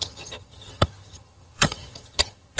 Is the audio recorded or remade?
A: remade